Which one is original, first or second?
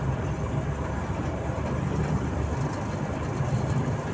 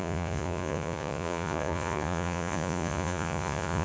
first